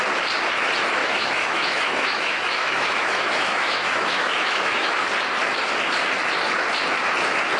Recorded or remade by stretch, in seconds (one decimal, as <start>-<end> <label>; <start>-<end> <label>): 0.0-1.0 recorded; 1.0-5.1 remade; 5.1-7.6 recorded